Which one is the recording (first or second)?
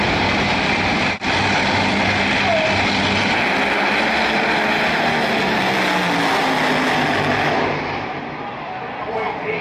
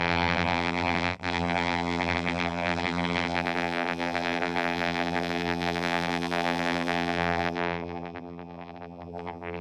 first